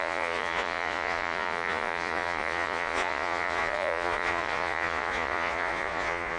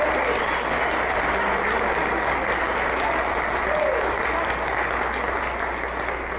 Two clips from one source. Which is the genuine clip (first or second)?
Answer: second